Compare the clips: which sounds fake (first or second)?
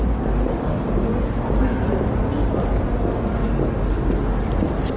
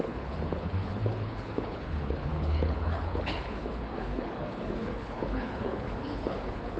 second